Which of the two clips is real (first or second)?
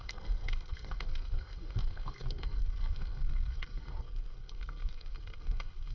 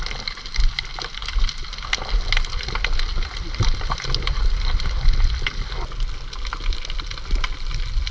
second